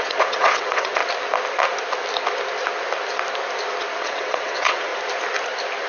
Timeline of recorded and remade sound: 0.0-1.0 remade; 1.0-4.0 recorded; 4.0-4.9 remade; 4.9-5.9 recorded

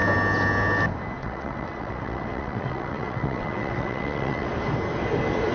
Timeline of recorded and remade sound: 0.0-1.2 recorded; 1.2-4.5 remade; 4.5-5.5 recorded

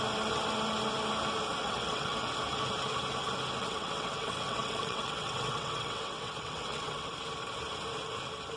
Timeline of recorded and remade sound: 0.0-1.6 recorded; 1.6-2.3 remade; 2.3-3.6 recorded; 3.6-7.1 remade; 7.1-8.6 recorded

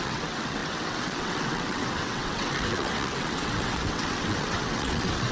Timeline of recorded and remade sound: 0.0-5.3 remade